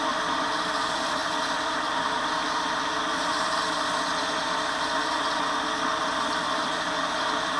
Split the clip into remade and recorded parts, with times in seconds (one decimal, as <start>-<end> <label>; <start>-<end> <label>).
0.0-7.6 remade